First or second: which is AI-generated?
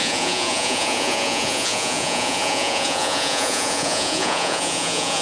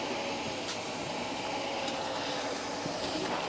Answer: first